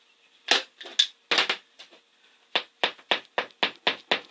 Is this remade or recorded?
recorded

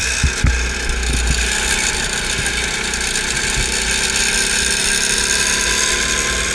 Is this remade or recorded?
recorded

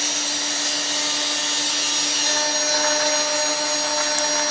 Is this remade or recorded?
recorded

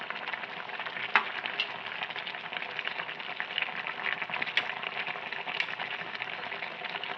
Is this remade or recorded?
recorded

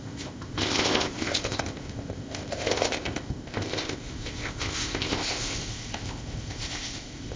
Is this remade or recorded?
remade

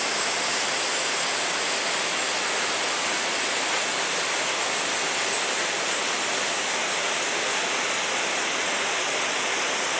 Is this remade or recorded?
recorded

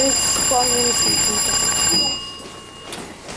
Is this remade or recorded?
recorded